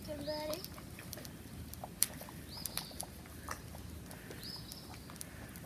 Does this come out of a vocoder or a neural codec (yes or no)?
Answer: no